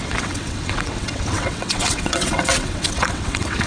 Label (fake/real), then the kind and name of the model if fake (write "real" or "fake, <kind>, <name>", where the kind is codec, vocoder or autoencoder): fake, vocoder, WaveNeXt